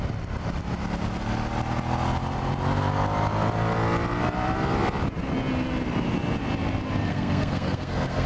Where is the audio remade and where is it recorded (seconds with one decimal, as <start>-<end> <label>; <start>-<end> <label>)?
0.0-7.1 recorded; 7.1-8.3 remade